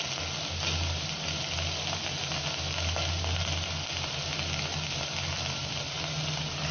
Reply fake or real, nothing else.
real